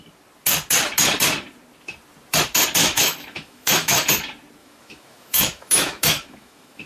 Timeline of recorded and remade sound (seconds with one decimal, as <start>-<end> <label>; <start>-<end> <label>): 0.0-2.8 recorded; 2.8-4.1 remade; 4.1-4.6 recorded; 4.6-6.9 remade